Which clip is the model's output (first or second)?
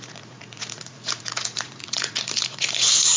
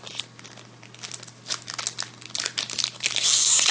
first